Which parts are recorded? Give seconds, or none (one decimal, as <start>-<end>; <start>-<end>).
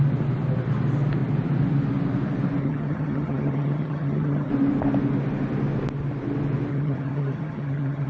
0.0-2.6; 4.5-6.7